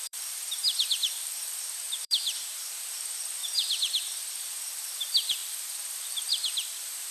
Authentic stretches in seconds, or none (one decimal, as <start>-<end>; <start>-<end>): 0.6-1.2; 3.4-4.3